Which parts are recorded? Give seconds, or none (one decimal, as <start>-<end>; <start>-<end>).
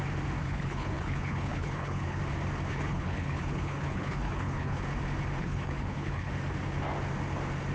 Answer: 0.0-0.4; 2.2-2.7; 4.8-5.4; 6.3-7.7